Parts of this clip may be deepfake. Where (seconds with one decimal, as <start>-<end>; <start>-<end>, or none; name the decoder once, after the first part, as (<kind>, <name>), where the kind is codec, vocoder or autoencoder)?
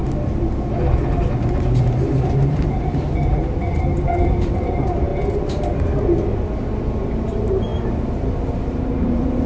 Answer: 1.8-5.1 (vocoder, BigVGAN v2); 7.2-9.5